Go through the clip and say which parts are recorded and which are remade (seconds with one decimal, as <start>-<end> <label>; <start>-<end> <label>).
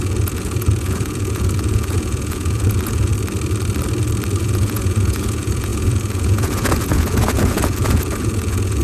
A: 0.0-3.1 remade; 3.1-4.4 recorded; 4.4-8.8 remade